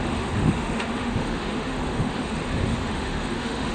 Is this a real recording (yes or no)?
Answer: no